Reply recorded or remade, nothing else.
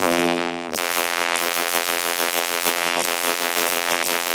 remade